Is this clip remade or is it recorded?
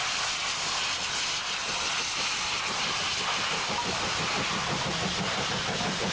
recorded